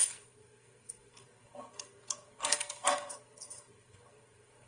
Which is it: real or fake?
fake